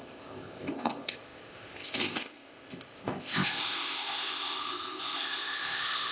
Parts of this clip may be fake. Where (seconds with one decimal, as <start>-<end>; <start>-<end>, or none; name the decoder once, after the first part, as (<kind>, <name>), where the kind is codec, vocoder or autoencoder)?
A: 0.0-6.1 (codec, ZipCodec)